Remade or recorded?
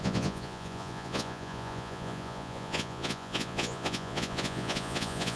remade